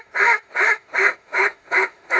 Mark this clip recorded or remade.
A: remade